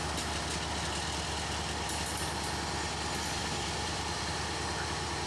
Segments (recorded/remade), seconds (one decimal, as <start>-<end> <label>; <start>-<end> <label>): 0.0-3.4 recorded; 3.4-4.2 remade; 4.2-5.3 recorded